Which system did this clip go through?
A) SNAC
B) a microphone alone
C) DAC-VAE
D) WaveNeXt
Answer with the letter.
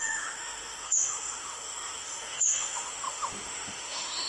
C